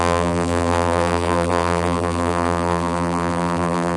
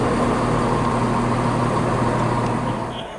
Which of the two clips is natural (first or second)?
second